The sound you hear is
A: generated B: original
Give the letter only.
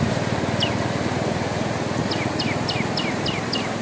B